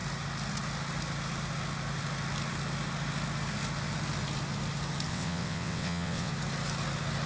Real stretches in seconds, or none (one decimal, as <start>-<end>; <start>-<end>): 0.0-5.1; 6.3-7.3